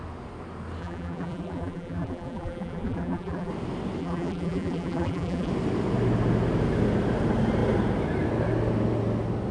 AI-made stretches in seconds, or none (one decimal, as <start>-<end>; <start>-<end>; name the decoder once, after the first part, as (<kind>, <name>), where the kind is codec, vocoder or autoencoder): 0.8-3.5 (vocoder, BigVGAN v2); 4.0-5.5